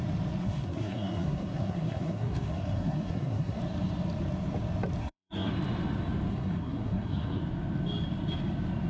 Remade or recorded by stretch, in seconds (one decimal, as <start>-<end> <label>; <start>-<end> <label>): 0.0-0.4 recorded; 0.4-3.6 remade; 3.6-5.0 recorded; 5.0-5.5 remade; 5.5-6.3 recorded; 6.3-7.4 remade; 7.4-8.9 recorded